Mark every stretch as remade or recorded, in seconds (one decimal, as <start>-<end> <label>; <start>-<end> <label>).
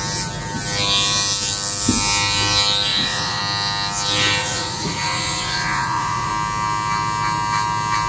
0.0-2.9 recorded; 2.9-3.4 remade; 3.4-4.4 recorded; 4.4-6.3 remade; 6.3-8.1 recorded